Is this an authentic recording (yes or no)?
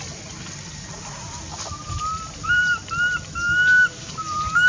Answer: yes